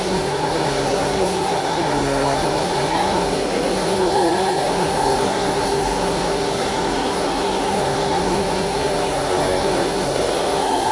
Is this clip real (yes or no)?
no